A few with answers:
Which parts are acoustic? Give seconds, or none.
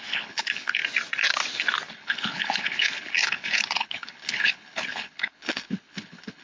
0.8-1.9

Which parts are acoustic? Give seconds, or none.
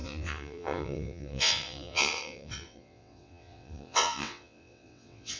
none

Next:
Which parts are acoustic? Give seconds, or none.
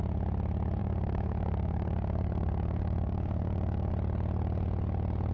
0.0-0.8; 3.9-5.3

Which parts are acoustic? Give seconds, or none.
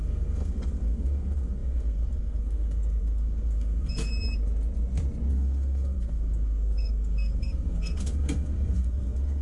4.1-5.3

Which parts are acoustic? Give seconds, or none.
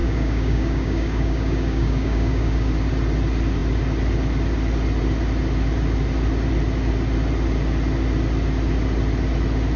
2.7-9.8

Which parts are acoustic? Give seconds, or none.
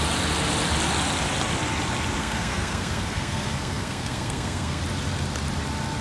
0.0-2.2; 4.8-6.0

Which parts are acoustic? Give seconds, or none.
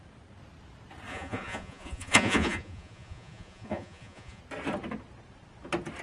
0.0-1.1; 4.4-6.0